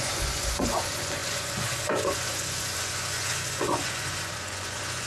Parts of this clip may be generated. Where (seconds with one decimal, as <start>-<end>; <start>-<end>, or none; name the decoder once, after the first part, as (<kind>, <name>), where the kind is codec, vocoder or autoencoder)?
0.0-5.1 (vocoder, Vocos)